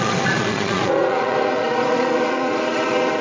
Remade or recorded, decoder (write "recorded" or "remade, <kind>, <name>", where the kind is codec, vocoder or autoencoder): remade, vocoder, Vocos